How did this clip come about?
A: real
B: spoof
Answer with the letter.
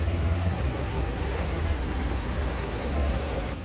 B